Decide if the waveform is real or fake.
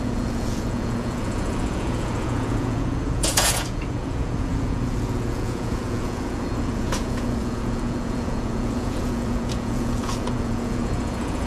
fake